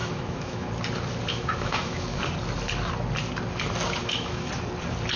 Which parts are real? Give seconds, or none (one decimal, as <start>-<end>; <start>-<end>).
0.7-1.3; 2.2-4.0; 4.5-5.2